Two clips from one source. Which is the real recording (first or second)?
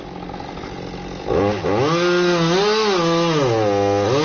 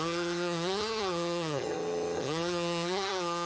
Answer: first